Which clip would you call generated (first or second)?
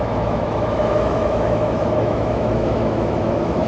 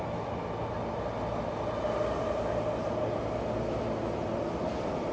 first